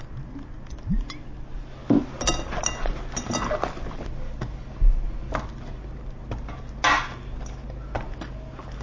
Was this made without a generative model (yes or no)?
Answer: yes